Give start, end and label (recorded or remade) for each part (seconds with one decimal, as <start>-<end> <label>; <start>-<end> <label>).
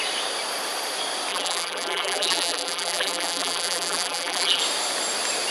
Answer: 0.0-1.3 recorded; 1.3-4.6 remade; 4.6-5.5 recorded